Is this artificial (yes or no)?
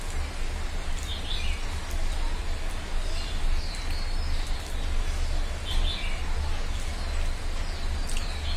no